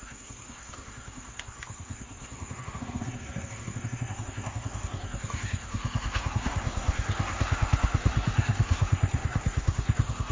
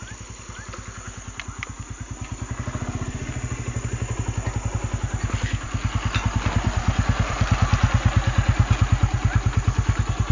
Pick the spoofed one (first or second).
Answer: first